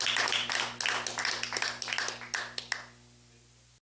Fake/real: real